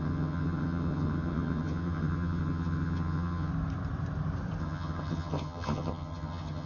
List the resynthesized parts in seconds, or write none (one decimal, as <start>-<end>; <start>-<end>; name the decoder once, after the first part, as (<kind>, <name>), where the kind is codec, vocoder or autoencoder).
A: 0.0-3.5 (vocoder, HiFi-GAN); 4.6-6.7